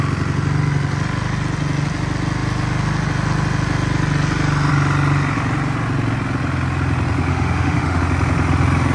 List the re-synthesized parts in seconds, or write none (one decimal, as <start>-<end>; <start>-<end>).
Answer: 7.3-8.0